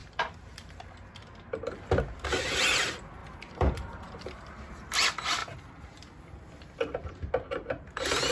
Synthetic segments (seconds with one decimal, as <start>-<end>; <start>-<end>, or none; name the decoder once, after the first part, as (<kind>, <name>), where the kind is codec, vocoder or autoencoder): 0.0-1.7 (vocoder, BigVGAN v2); 3.2-4.9